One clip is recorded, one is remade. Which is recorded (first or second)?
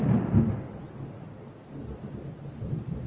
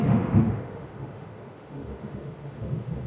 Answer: first